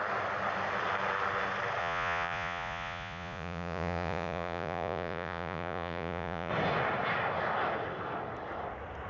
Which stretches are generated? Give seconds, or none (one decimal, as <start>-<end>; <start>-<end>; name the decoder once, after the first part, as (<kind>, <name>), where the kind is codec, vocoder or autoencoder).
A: 1.8-6.5 (vocoder, Vocos)

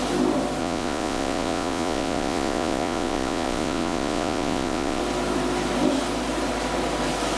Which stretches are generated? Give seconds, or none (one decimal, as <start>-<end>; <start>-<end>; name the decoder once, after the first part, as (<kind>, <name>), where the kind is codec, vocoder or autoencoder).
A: 0.6-5.0 (vocoder, Vocos)

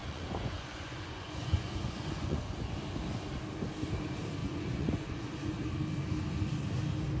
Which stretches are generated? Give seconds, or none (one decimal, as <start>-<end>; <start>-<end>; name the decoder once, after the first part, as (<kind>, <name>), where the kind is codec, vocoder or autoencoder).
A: 0.0-2.7 (vocoder, Vocos); 4.4-5.6

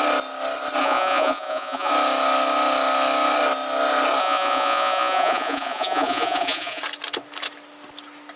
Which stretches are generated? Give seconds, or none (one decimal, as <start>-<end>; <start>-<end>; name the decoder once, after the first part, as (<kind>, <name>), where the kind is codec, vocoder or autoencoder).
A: 0.8-1.9 (vocoder, Vocos); 4.2-6.8

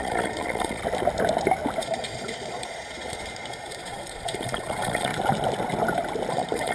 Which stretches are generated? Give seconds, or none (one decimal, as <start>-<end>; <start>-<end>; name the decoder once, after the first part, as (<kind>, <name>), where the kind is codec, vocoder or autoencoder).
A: 0.0-0.8 (vocoder, Vocos); 1.8-5.1; 6.3-6.7

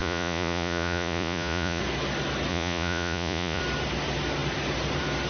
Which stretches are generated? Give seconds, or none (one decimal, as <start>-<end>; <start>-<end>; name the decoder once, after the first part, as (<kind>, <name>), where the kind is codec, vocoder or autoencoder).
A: 0.0-1.8 (vocoder, Vocos); 2.5-3.6